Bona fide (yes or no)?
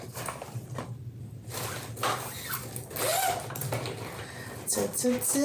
yes